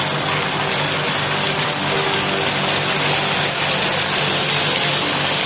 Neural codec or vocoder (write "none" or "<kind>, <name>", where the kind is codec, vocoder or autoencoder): none